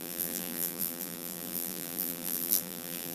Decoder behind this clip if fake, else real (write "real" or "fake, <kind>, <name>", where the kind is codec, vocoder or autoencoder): fake, vocoder, BigVGAN v2